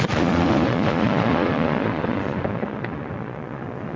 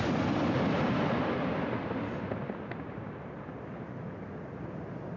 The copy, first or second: first